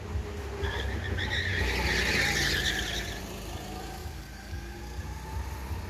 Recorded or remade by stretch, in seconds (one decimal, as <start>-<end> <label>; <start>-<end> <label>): 0.0-4.0 recorded; 4.0-4.8 remade; 4.8-5.9 recorded